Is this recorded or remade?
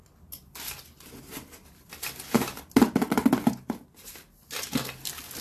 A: recorded